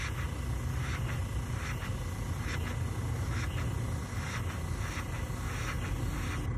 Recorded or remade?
recorded